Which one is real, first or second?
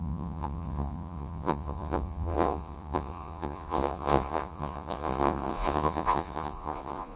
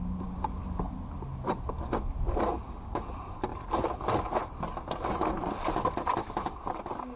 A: second